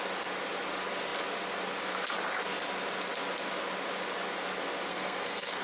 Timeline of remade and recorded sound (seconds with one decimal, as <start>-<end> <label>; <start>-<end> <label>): 0.0-4.9 recorded; 4.9-5.6 remade